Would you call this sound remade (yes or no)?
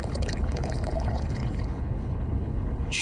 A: yes